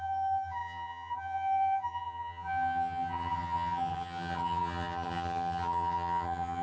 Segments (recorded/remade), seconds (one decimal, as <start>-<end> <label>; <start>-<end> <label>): 0.0-6.6 remade